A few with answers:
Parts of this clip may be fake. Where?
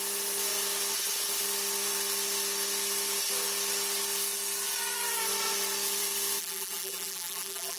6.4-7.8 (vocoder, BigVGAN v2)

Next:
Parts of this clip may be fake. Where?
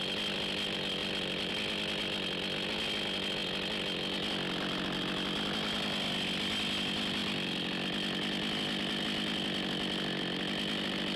1.0-1.5 (vocoder, BigVGAN v2)